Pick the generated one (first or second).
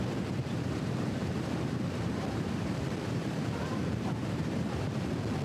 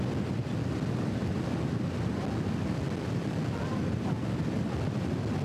first